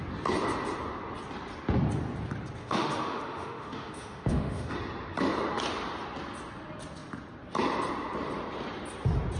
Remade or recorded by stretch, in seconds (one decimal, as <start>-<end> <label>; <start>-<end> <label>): 0.0-2.6 recorded; 2.6-4.7 remade; 4.7-9.4 recorded